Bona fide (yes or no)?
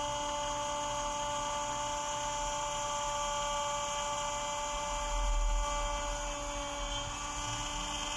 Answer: yes